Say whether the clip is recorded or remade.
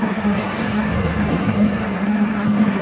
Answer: remade